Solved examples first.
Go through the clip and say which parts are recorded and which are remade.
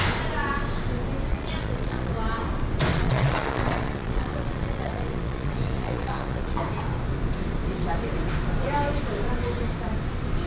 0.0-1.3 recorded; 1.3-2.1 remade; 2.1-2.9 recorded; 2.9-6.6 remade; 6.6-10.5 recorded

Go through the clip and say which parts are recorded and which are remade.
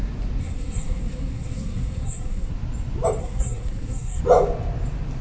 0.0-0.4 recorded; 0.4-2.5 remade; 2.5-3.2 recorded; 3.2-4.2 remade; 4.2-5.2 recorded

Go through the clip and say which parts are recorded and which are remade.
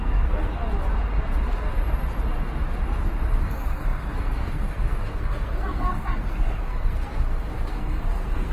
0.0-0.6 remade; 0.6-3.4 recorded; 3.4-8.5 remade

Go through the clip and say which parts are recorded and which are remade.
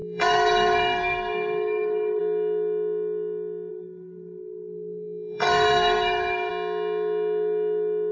0.0-2.2 remade; 2.2-3.7 recorded; 3.7-6.5 remade; 6.5-8.1 recorded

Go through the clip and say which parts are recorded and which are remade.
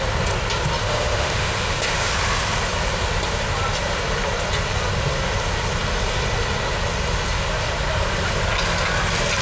0.0-0.8 recorded; 0.8-2.1 remade; 2.1-9.4 recorded